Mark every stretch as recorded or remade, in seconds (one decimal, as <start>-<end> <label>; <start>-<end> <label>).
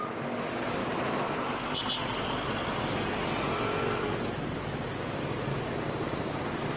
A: 0.0-5.5 recorded; 5.5-6.3 remade; 6.3-6.8 recorded